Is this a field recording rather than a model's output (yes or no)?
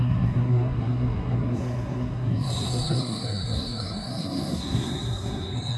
no